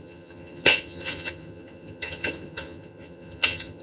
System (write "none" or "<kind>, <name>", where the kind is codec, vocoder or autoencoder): vocoder, HiFi-GAN